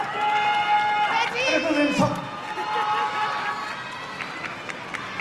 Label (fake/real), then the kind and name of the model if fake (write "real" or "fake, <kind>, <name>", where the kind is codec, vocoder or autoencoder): real